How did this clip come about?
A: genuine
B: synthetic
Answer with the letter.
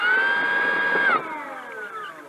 A